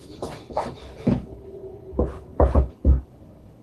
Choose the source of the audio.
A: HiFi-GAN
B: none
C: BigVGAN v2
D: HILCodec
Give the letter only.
D